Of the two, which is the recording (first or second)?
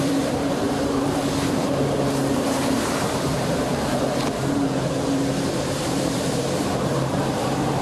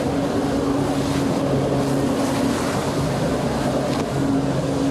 second